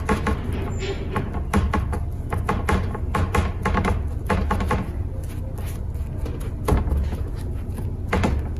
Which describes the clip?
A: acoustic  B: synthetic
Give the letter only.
A